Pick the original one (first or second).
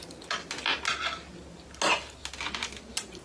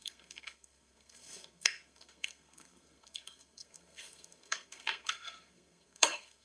first